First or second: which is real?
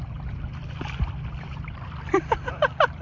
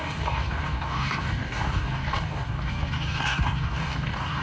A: first